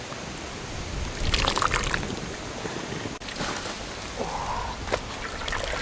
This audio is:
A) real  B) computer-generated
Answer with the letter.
A